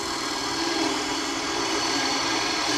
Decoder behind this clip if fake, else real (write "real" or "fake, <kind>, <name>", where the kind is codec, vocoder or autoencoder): fake, vocoder, BigVGAN v2